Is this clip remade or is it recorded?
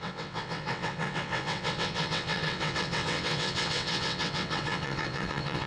remade